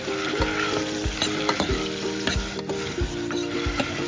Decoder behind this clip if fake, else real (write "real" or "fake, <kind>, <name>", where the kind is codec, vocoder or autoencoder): real